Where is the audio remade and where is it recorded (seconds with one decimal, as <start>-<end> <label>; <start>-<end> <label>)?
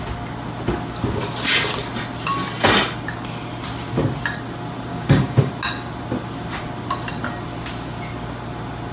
0.0-4.9 recorded; 4.9-5.5 remade; 5.5-8.9 recorded